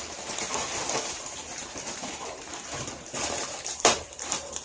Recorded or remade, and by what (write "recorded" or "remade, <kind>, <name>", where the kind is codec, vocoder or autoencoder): remade, vocoder, BigVGAN v2